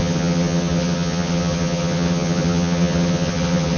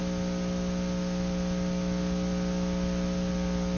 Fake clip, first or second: first